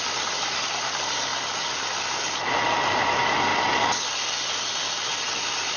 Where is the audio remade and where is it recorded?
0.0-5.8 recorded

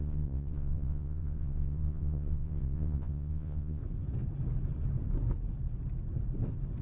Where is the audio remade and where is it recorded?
0.0-3.8 remade; 3.8-6.8 recorded

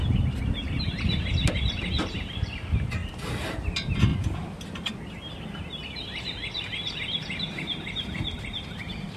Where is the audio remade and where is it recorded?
0.0-3.0 recorded; 3.0-3.6 remade; 3.6-4.1 recorded; 4.1-4.9 remade; 4.9-9.2 recorded

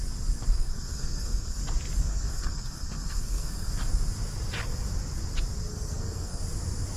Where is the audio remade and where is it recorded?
0.0-0.5 recorded; 0.5-1.6 remade; 1.6-2.0 recorded; 2.0-3.7 remade; 3.7-5.7 recorded; 5.7-6.4 remade; 6.4-7.0 recorded

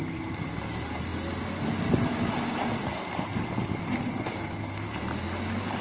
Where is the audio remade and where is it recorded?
0.0-5.8 recorded

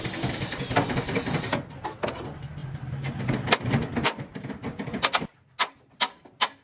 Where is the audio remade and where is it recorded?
0.0-6.6 recorded

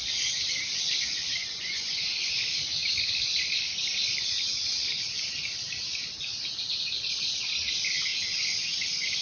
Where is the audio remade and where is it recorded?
0.0-1.4 recorded; 1.4-2.3 remade; 2.3-9.2 recorded